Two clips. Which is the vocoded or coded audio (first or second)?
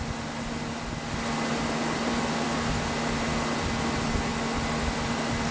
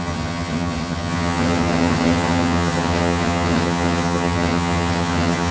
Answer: second